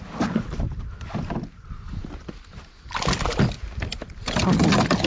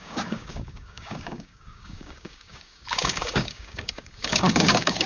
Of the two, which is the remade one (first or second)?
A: second